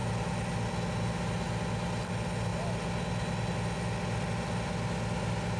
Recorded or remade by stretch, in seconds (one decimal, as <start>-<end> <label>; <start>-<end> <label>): 0.0-5.6 recorded